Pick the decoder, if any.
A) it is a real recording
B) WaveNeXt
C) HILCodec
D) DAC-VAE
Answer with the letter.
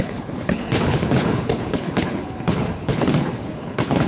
C